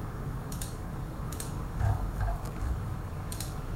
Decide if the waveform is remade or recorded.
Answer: remade